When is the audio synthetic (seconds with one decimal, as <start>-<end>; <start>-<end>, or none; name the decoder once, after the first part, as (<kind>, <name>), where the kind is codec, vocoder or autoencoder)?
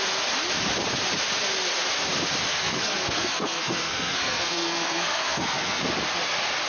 2.5-5.8 (codec, SNAC)